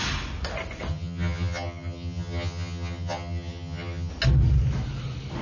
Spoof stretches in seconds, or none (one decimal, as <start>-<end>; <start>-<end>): 0.9-4.1